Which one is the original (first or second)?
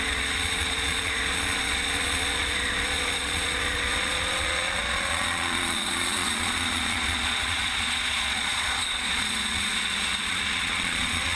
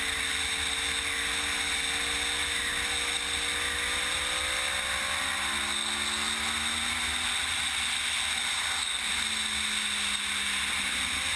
second